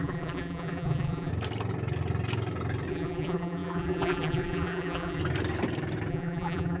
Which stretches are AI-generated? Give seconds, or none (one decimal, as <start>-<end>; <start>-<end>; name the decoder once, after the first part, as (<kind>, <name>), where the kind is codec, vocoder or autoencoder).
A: 0.0-1.3 (vocoder, BigVGAN v2); 2.9-5.2; 6.1-6.8